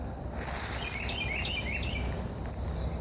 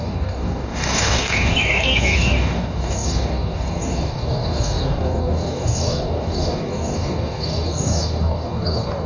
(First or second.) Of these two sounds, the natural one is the first